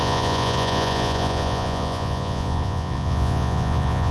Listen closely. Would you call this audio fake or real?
fake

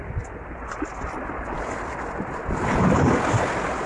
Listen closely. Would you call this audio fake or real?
real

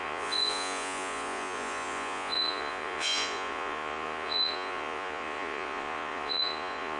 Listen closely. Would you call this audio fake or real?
fake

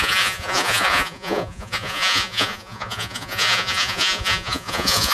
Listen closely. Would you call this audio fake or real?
fake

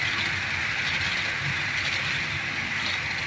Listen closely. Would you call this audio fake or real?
real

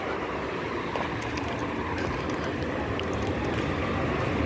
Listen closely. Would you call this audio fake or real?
real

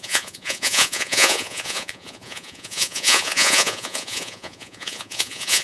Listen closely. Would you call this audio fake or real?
fake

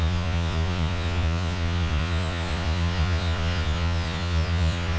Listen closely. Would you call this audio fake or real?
fake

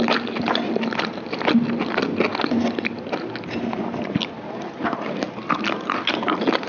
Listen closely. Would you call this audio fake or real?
real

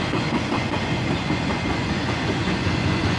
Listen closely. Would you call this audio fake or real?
fake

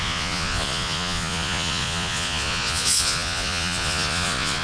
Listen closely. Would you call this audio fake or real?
fake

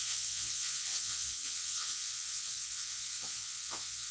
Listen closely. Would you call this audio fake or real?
fake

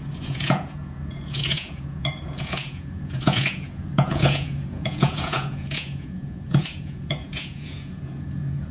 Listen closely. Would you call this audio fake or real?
fake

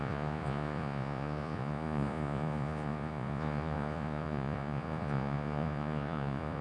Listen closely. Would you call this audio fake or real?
fake